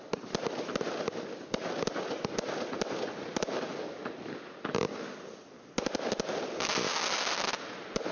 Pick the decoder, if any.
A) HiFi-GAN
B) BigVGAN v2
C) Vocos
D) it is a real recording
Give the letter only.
D